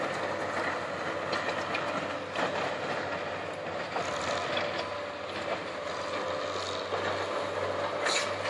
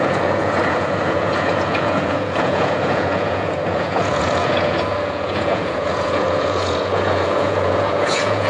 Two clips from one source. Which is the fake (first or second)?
second